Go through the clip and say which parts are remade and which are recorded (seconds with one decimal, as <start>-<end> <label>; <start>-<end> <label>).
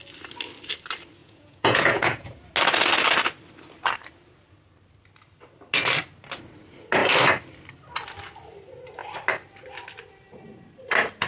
0.0-1.2 recorded; 1.2-2.3 remade; 2.3-11.3 recorded